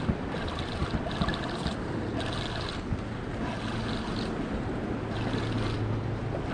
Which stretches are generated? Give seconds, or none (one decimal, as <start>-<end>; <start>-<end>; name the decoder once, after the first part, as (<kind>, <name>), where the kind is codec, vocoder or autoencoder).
none